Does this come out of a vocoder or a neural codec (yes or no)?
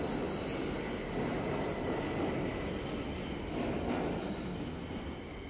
no